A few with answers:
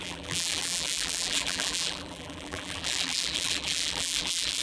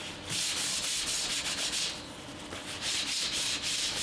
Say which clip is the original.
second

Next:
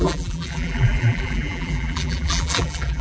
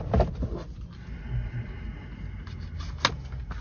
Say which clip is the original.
second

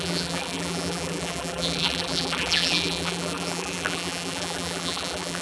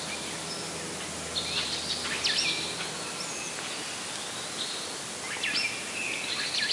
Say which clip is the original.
second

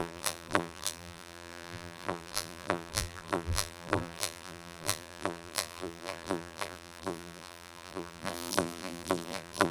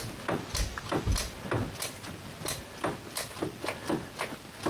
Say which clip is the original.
second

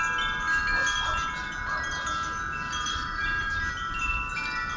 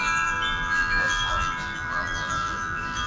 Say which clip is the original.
first